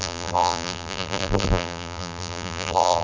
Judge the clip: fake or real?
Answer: fake